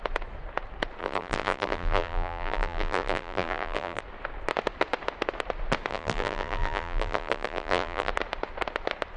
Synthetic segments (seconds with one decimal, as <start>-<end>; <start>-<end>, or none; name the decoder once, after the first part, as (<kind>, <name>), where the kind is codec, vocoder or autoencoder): 1.0-4.0 (vocoder, BigVGAN v2); 5.9-8.1